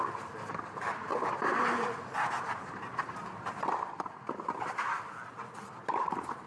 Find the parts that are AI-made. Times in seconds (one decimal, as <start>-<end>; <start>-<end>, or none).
none